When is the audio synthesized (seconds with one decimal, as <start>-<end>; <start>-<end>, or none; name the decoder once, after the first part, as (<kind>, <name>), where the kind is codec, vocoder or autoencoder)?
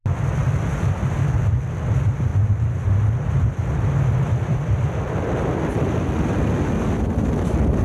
2.3-4.8 (vocoder, BigVGAN v2)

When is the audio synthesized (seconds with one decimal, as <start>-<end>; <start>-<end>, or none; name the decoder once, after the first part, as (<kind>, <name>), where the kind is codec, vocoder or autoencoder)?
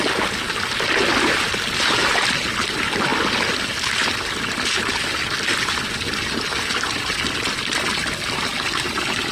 none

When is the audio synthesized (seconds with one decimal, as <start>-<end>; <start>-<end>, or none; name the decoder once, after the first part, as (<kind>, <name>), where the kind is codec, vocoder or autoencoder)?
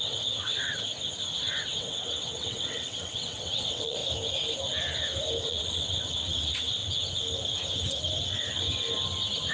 0.0-0.9 (vocoder, WaveNeXt); 1.5-4.0; 5.4-6.8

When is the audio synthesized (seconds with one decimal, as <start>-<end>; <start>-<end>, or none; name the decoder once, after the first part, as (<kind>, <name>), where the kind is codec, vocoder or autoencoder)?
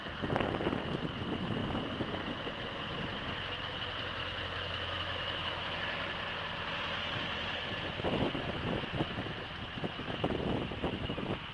4.2-5.8 (autoencoder, DAC-VAE)